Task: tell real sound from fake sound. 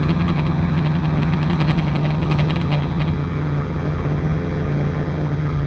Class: fake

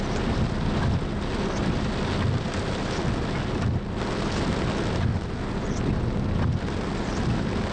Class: real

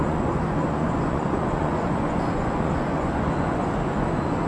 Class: fake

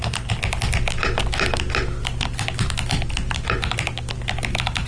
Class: real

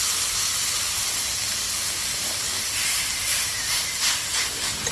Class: real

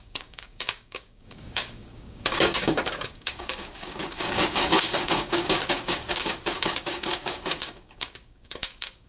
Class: fake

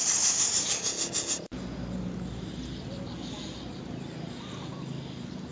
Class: real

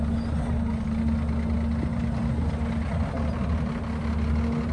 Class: real